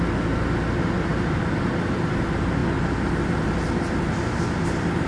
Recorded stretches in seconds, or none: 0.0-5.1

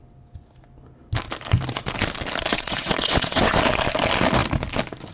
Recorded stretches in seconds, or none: 0.0-2.5; 3.6-5.1

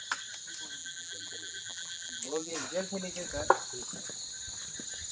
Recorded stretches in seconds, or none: 0.0-0.8; 2.5-5.1

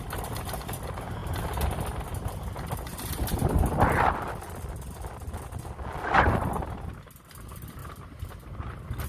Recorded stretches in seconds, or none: 0.0-9.1

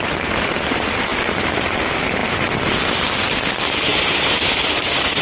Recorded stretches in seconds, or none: 0.0-1.1; 1.8-3.9

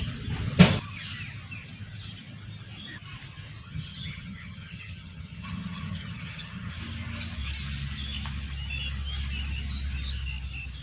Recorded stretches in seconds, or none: 0.0-3.6; 6.7-10.8